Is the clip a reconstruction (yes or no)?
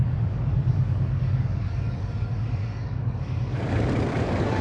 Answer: yes